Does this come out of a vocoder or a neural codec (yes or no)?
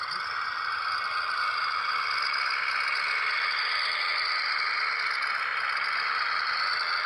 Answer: no